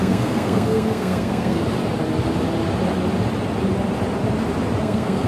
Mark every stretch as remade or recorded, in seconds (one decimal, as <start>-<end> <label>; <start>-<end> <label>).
0.0-1.6 remade; 1.6-4.8 recorded; 4.8-5.3 remade